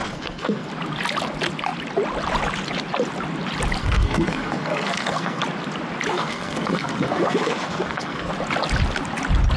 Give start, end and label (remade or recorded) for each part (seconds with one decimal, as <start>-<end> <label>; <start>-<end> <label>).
0.0-0.7 remade; 0.7-3.8 recorded; 3.8-5.4 remade; 5.4-6.1 recorded; 6.1-8.3 remade; 8.3-9.6 recorded